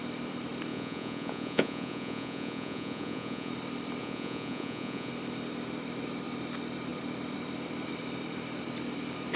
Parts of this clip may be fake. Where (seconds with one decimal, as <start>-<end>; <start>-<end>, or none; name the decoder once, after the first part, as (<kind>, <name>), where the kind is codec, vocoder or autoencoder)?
0.7-3.5 (vocoder, Vocos); 4.0-5.1